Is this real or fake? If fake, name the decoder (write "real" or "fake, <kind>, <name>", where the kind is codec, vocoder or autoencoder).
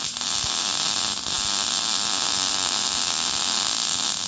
real